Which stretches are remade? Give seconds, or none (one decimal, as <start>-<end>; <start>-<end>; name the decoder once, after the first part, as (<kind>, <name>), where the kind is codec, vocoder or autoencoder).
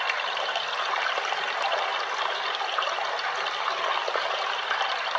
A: none